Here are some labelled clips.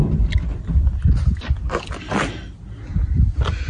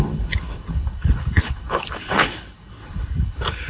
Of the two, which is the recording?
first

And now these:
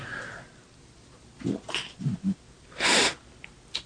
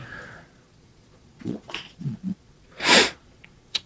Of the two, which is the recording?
first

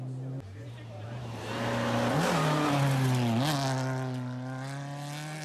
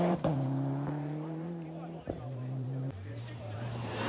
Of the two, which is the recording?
first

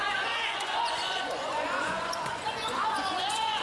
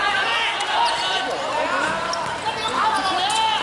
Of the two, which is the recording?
second